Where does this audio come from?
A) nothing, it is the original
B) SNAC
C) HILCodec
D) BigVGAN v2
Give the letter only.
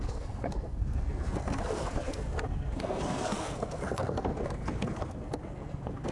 B